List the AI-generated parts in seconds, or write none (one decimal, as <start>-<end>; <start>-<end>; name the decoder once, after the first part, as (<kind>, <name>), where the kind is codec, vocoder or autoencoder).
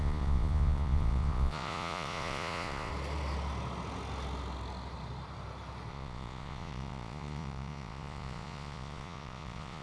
0.0-2.9 (vocoder, Vocos); 5.9-9.8